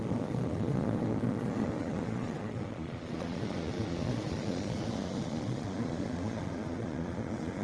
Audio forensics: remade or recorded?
remade